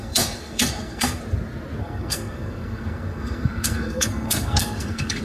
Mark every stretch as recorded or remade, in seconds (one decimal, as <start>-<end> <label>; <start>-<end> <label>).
0.0-1.2 remade; 1.2-1.8 recorded; 1.8-5.2 remade